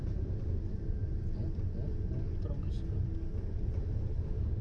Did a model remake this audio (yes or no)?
no